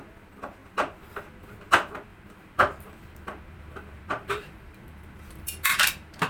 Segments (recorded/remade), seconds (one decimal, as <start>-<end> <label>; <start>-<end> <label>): 0.0-2.1 recorded; 2.1-6.3 remade